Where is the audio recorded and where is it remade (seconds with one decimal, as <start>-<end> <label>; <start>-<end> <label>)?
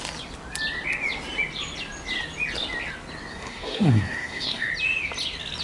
0.0-3.3 recorded; 3.3-4.7 remade; 4.7-5.6 recorded